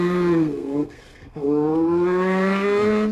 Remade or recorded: remade